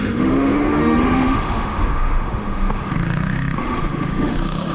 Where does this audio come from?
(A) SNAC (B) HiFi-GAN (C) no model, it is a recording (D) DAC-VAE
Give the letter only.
D